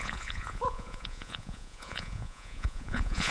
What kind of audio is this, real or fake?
fake